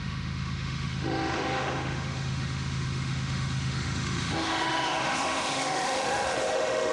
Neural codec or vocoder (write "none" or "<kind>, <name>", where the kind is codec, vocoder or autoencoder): autoencoder, DAC-VAE